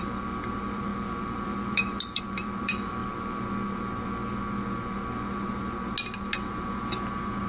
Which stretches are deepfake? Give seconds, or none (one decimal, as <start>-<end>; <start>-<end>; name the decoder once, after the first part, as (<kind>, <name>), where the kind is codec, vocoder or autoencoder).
0.0-3.0 (vocoder, BigVGAN v2)